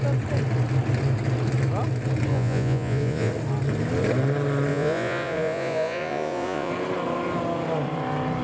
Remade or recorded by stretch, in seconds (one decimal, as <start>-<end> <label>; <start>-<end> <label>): 0.0-2.3 recorded; 2.3-3.3 remade; 3.3-4.7 recorded; 4.7-6.7 remade; 6.7-8.4 recorded